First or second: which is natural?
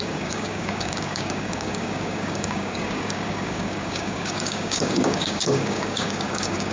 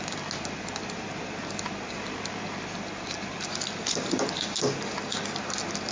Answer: second